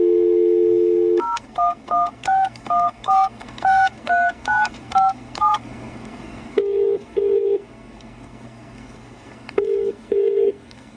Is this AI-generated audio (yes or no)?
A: yes